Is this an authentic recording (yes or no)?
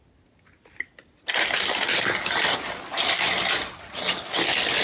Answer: yes